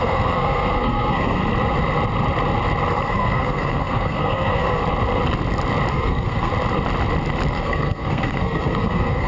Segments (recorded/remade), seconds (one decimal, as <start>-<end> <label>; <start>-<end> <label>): 0.0-1.4 remade; 1.4-3.1 recorded; 3.1-4.8 remade; 4.8-5.9 recorded; 5.9-6.5 remade; 6.5-7.5 recorded; 7.5-9.3 remade